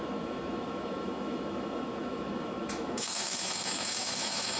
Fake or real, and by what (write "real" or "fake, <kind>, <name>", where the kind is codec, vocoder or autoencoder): fake, autoencoder, DAC-VAE